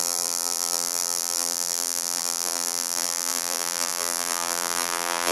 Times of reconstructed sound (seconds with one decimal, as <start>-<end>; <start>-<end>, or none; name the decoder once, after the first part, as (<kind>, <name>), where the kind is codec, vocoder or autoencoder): 0.0-5.3 (vocoder, BigVGAN v2)